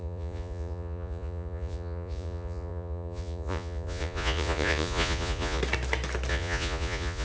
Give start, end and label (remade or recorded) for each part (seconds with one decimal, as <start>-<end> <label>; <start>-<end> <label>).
0.0-5.6 remade; 5.6-6.3 recorded; 6.3-7.2 remade